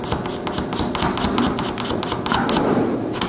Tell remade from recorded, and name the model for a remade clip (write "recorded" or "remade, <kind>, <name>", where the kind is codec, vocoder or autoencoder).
recorded